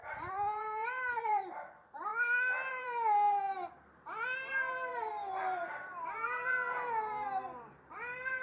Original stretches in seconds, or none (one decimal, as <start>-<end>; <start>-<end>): 2.1-2.7